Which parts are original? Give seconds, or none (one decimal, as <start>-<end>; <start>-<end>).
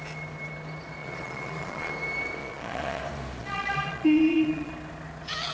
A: 0.0-1.0; 1.9-2.4; 3.0-3.4; 4.7-5.5